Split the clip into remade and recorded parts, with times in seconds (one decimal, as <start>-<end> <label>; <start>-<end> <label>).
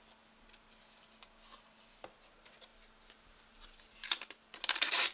0.0-2.7 remade; 2.7-4.3 recorded; 4.3-5.1 remade